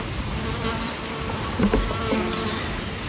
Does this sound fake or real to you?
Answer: real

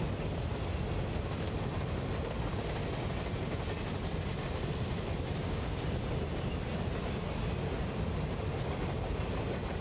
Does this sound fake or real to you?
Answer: real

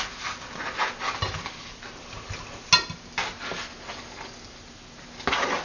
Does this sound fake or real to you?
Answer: real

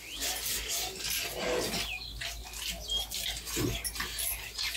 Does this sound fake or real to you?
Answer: real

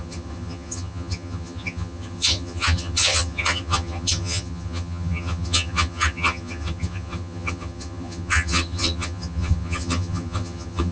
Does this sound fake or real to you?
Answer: fake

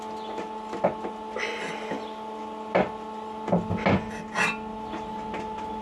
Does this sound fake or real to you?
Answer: real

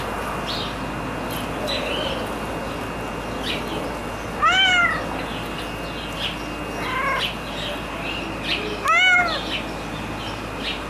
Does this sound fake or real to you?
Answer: real